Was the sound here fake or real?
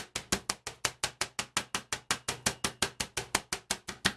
real